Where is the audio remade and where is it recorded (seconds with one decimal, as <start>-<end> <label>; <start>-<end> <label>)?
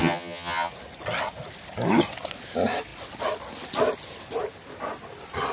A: 0.0-0.7 remade; 0.7-5.5 recorded